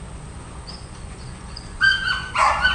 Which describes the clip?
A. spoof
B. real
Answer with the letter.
A